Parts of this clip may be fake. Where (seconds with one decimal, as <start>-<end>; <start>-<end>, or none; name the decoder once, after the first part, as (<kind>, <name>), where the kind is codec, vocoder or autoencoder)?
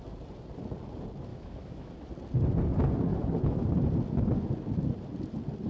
1.3-1.9 (autoencoder, DAC-VAE)